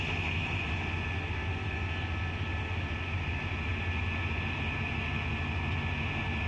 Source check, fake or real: real